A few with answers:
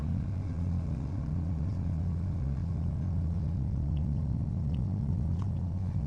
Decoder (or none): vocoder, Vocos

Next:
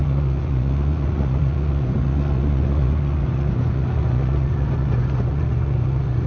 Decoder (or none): vocoder, Vocos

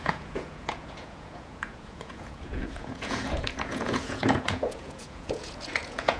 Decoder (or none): vocoder, Vocos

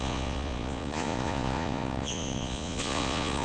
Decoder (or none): vocoder, Vocos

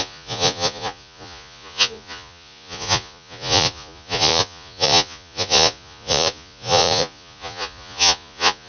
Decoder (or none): vocoder, Vocos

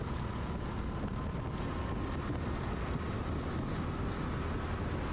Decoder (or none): none